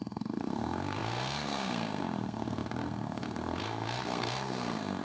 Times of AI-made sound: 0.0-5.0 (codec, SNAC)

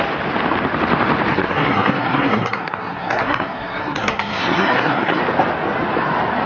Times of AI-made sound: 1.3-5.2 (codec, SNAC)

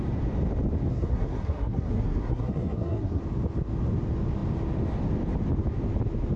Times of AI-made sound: 0.9-3.2 (codec, SNAC)

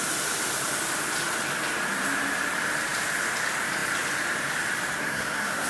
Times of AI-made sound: 5.0-5.7 (codec, SNAC)

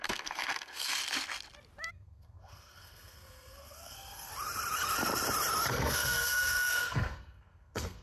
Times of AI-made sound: 0.0-1.0 (codec, SNAC); 1.9-4.3; 5.7-8.0

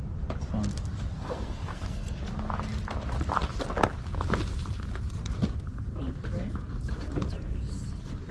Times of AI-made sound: 1.1-2.2 (codec, SNAC)

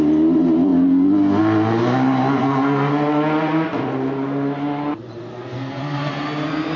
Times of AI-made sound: 2.4-2.9 (codec, SNAC); 5.3-6.1